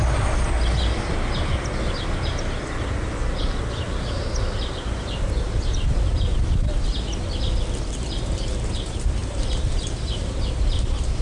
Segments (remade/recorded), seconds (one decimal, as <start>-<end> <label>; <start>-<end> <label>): 0.0-9.2 recorded; 9.2-11.2 remade